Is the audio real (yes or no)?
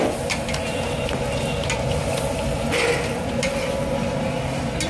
yes